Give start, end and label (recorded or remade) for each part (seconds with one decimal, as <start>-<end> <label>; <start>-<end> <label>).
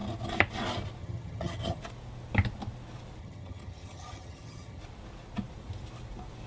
0.0-1.0 recorded; 1.0-1.8 remade; 1.8-3.2 recorded; 3.2-4.8 remade; 4.8-6.5 recorded